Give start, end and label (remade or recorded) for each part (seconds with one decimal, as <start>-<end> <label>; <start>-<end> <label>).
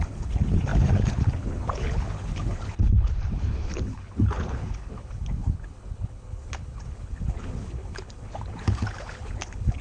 0.0-9.8 remade